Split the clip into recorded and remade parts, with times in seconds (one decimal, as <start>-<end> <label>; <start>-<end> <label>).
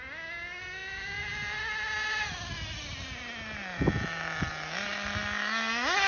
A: 0.0-6.1 recorded